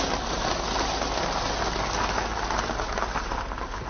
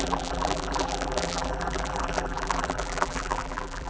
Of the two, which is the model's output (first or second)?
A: second